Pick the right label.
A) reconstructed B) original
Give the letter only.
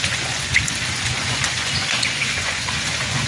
A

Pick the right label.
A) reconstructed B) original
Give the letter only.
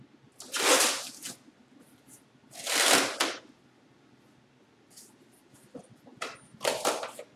B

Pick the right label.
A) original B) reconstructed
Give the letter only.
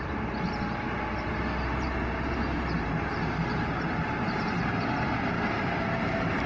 B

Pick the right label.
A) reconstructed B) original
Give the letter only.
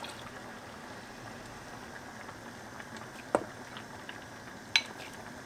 B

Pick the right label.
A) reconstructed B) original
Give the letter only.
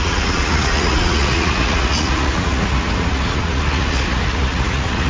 A